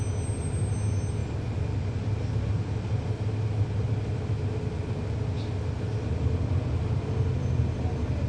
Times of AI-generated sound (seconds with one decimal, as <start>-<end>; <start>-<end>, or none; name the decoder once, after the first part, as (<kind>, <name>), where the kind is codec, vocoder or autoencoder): none